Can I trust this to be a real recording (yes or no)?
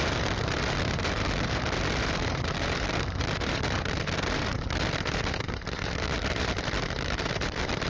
no